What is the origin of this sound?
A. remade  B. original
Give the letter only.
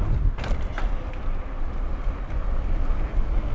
B